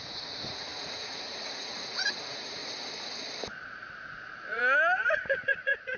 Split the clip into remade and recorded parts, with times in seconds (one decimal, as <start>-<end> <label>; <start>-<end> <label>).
0.0-2.6 remade; 2.6-3.5 recorded; 3.5-6.0 remade